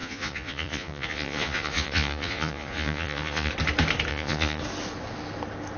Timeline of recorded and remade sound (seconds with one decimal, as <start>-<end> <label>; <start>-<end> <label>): 0.0-3.5 remade; 3.5-4.1 recorded; 4.1-4.6 remade; 4.6-5.8 recorded